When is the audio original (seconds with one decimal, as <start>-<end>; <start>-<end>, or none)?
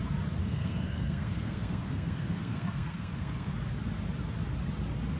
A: 0.0-0.4; 3.5-5.2